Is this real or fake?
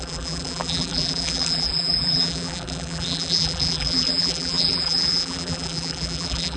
fake